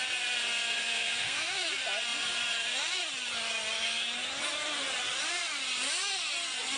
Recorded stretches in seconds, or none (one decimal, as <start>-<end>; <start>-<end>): 0.0-0.8; 1.7-6.8